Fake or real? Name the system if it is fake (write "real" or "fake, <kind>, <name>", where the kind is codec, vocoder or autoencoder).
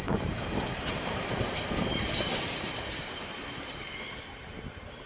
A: fake, vocoder, BigVGAN v2